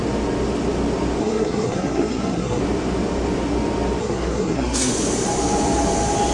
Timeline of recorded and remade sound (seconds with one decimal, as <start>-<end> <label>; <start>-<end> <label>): 0.0-1.2 recorded; 1.2-2.6 remade; 2.6-4.0 recorded; 4.0-4.9 remade; 4.9-6.3 recorded